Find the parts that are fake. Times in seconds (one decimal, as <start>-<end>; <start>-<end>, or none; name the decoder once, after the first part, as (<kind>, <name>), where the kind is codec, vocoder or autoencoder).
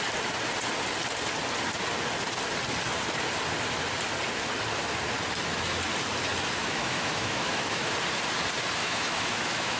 6.6-7.9 (autoencoder, DAC-VAE); 8.8-9.8